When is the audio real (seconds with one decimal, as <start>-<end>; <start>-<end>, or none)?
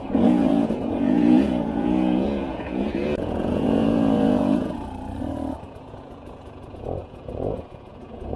4.8-5.5